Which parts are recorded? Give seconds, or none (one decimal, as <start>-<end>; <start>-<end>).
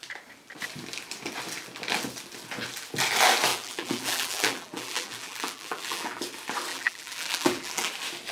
0.0-3.5; 6.2-6.7; 7.9-8.3